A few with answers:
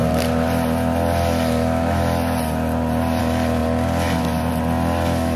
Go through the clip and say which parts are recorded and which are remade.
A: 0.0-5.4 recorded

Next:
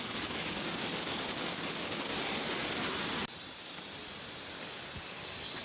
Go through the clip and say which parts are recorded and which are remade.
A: 0.0-2.1 remade; 2.1-5.1 recorded; 5.1-5.6 remade

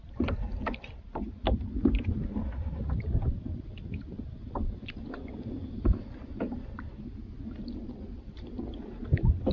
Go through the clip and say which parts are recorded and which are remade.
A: 0.0-6.9 remade; 6.9-7.8 recorded; 7.8-9.5 remade

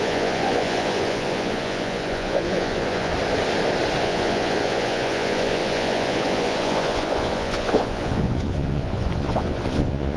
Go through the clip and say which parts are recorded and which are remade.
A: 0.0-3.1 remade; 3.1-4.0 recorded; 4.0-10.2 remade

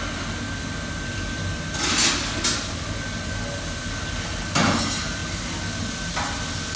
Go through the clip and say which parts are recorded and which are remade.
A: 0.0-6.8 recorded

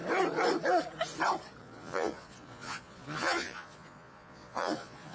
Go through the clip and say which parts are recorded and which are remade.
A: 0.0-1.6 recorded; 1.6-5.1 remade

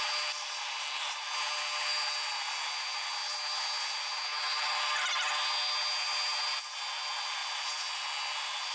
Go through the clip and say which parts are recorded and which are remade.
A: 0.0-8.7 recorded

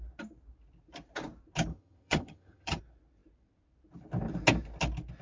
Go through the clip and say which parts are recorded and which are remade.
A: 0.0-1.7 recorded; 1.7-2.8 remade; 2.8-5.2 recorded